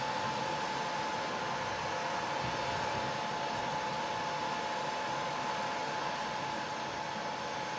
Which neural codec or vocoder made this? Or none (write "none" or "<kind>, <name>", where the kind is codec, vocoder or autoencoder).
none